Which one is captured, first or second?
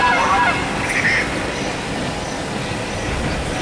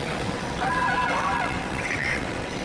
first